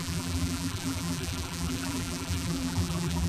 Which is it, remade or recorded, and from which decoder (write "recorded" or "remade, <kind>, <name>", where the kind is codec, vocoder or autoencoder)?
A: remade, vocoder, BigVGAN v2